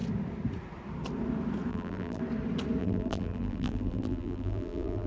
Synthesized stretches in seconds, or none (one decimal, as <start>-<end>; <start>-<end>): 1.7-2.2; 2.8-5.1